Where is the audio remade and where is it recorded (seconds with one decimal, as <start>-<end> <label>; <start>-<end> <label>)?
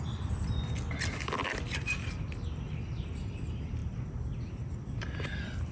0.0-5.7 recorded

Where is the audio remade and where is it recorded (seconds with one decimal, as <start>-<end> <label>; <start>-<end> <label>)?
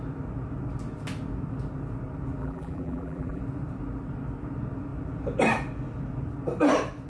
0.0-2.4 recorded; 2.4-3.4 remade; 3.4-7.1 recorded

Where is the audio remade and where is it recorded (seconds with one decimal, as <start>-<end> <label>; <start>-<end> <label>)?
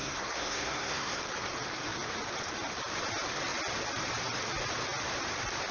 0.0-1.2 remade; 1.2-5.7 recorded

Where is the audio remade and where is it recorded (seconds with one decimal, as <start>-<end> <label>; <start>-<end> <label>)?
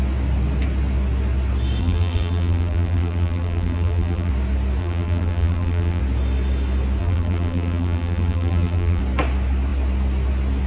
0.0-1.8 recorded; 1.8-4.3 remade; 4.3-4.8 recorded; 4.8-6.0 remade; 6.0-7.0 recorded; 7.0-9.0 remade; 9.0-10.7 recorded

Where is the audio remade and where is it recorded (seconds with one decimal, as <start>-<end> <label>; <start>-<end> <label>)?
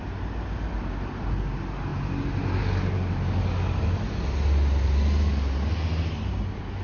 0.0-6.8 recorded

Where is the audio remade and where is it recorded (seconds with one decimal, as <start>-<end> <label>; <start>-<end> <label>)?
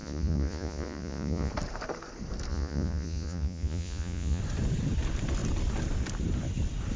0.0-1.5 remade; 1.5-2.5 recorded; 2.5-4.4 remade; 4.4-7.0 recorded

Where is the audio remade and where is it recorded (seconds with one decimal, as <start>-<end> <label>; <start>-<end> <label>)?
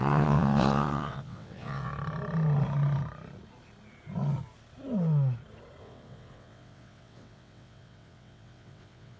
0.0-1.9 remade; 1.9-5.8 recorded; 5.8-9.2 remade